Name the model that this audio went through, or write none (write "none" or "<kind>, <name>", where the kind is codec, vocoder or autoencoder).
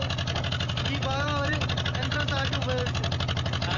none